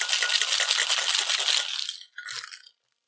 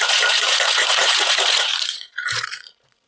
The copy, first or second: second